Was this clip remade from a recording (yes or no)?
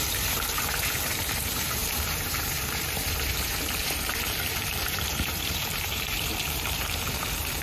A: yes